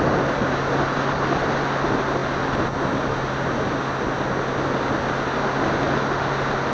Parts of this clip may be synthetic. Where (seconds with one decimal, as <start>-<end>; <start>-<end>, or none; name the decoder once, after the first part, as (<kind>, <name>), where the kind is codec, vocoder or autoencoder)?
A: none